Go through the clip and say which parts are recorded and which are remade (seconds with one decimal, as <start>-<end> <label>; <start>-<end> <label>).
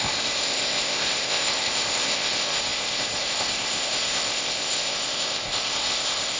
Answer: 0.0-6.4 remade